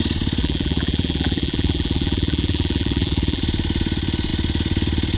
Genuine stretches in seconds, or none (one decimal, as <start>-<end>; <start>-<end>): 0.0-0.4; 3.4-5.2